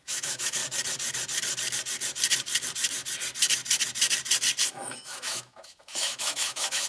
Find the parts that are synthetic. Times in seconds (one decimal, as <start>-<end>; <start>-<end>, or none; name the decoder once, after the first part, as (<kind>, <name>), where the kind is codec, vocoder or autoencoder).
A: 0.0-0.6 (autoencoder, DAC-VAE); 4.7-6.9